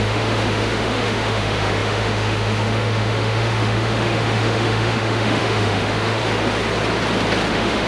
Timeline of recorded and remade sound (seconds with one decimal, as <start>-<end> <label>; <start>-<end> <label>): 0.0-6.2 remade; 6.2-7.5 recorded; 7.5-7.9 remade